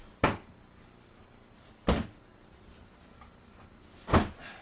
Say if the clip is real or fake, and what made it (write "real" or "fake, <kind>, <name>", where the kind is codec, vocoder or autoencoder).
real